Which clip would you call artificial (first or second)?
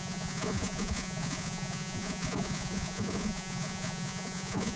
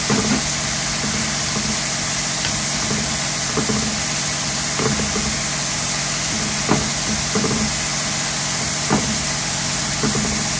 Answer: first